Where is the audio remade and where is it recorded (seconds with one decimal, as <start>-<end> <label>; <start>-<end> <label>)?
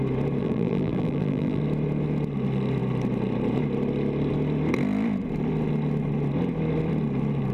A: 0.0-0.4 recorded; 0.4-1.6 remade; 1.6-7.5 recorded